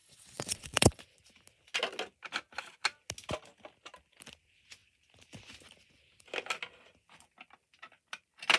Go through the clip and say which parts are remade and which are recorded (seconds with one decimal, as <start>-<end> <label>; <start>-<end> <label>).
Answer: 0.0-1.0 remade; 1.0-8.6 recorded